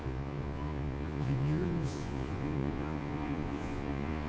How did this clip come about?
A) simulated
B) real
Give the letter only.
A